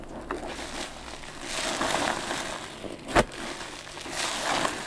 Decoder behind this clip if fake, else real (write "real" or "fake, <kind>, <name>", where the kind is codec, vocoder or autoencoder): real